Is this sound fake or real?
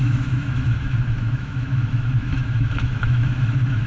fake